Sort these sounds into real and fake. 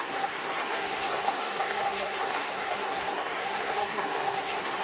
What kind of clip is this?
fake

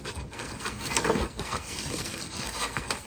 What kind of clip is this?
fake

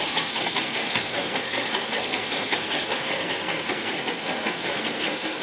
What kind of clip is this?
fake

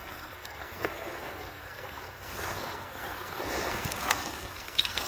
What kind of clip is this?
fake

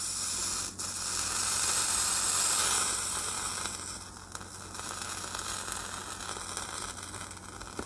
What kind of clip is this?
real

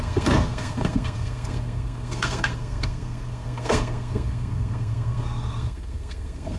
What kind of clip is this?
fake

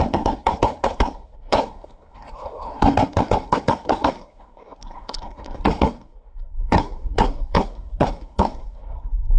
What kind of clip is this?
fake